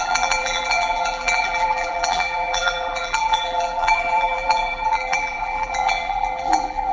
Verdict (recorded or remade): remade